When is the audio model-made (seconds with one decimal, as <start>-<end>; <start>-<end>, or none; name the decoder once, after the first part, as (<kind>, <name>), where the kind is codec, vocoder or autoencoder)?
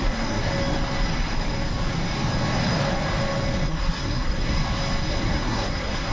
0.0-0.5 (codec, SNAC); 3.7-4.6; 5.1-6.1